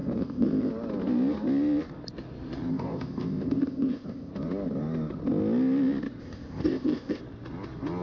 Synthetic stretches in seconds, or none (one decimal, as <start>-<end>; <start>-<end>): 0.0-0.7; 2.7-4.3; 6.2-7.2